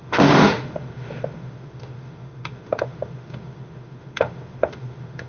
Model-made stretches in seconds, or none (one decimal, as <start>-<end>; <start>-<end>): 0.0-5.3